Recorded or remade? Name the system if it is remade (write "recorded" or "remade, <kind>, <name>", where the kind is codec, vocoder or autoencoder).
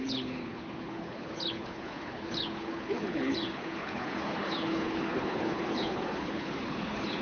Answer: remade, codec, HILCodec